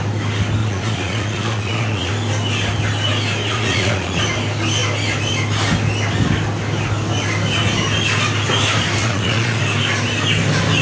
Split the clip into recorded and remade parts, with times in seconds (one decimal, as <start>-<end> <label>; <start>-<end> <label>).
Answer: 0.0-0.6 recorded; 0.6-2.1 remade; 2.1-3.5 recorded; 3.5-4.2 remade; 4.2-9.0 recorded; 9.0-9.6 remade; 9.6-10.8 recorded